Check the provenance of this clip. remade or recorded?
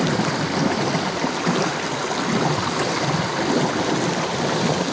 recorded